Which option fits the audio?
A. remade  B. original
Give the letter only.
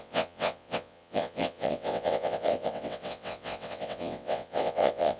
A